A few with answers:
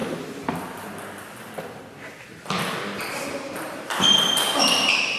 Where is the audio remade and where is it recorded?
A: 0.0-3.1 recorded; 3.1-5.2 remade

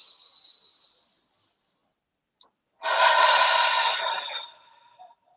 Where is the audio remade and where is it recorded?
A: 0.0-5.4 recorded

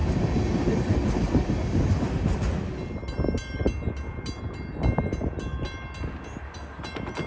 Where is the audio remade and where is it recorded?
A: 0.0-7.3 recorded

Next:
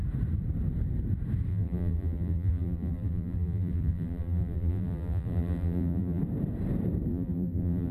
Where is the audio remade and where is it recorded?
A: 0.0-1.5 recorded; 1.5-6.2 remade; 6.2-7.1 recorded; 7.1-7.9 remade

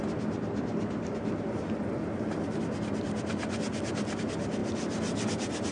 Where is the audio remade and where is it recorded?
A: 0.0-4.6 recorded; 4.6-5.7 remade